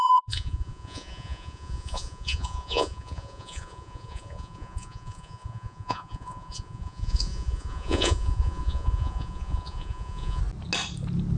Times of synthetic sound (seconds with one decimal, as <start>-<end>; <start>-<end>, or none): 0.0-10.4